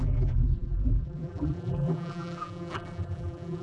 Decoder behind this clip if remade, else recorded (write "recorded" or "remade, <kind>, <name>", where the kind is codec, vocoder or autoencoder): remade, vocoder, BigVGAN v2